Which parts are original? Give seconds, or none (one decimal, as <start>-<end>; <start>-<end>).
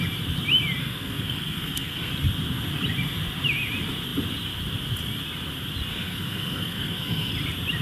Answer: 0.0-0.8; 2.1-5.9; 7.3-7.8